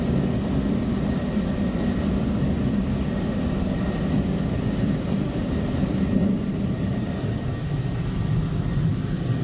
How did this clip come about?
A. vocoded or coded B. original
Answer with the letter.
B